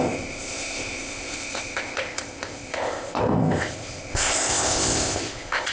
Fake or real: fake